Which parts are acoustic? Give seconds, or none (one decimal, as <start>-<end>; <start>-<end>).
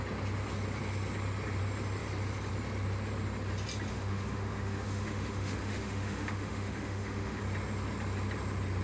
0.0-3.9; 7.4-8.8